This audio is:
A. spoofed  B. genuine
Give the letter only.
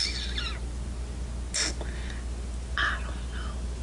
B